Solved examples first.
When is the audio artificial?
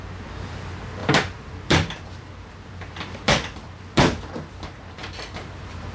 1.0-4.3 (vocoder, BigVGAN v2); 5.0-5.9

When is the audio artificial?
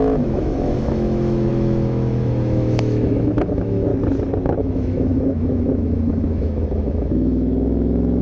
0.0-3.9 (autoencoder, DAC-VAE); 4.6-8.2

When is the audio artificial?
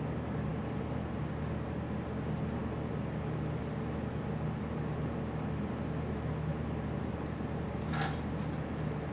none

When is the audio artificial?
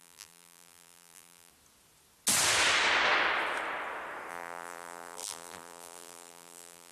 0.0-1.5 (vocoder, BigVGAN v2); 4.3-6.9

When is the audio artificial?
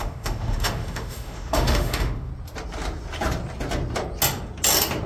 0.0-2.3 (autoencoder, DAC-VAE)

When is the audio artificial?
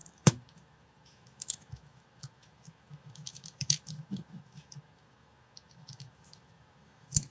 0.0-7.3 (autoencoder, DAC-VAE)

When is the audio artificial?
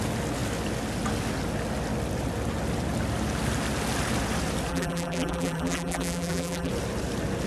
4.7-6.7 (vocoder, BigVGAN v2)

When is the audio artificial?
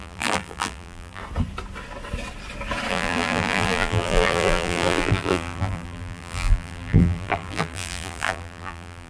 0.0-1.2 (vocoder, BigVGAN v2); 2.9-9.1